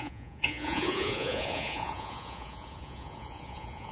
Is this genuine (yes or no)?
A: no